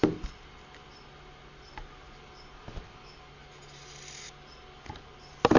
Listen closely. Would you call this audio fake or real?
real